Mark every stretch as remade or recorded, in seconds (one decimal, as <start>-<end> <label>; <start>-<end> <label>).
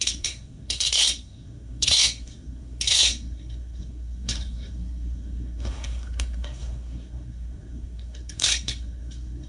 0.0-9.5 remade